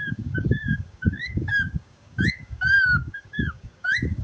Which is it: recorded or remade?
remade